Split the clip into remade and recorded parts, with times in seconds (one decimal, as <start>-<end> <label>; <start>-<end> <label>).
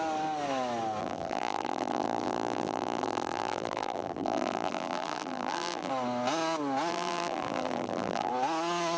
0.0-1.0 recorded; 1.0-5.9 remade; 5.9-6.9 recorded; 6.9-8.3 remade; 8.3-9.0 recorded